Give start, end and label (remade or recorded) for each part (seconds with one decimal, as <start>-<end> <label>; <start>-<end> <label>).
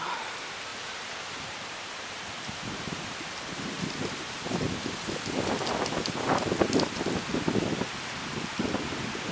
0.0-0.7 recorded; 0.7-5.2 remade; 5.2-9.3 recorded